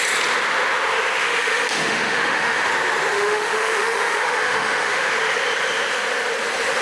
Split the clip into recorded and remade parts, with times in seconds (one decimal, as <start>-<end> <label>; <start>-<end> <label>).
0.0-1.2 recorded; 1.2-2.7 remade; 2.7-3.1 recorded; 3.1-5.1 remade; 5.1-6.8 recorded